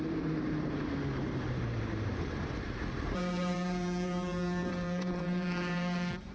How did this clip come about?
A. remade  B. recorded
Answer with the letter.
A